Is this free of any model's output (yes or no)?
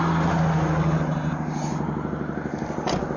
yes